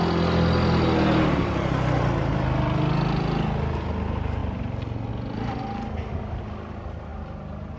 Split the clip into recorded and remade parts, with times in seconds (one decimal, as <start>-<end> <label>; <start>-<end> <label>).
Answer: 0.0-7.8 recorded